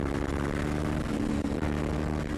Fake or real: real